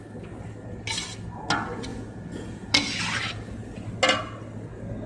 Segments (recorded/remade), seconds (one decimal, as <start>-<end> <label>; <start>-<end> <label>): 0.0-1.9 recorded; 1.9-3.0 remade; 3.0-5.1 recorded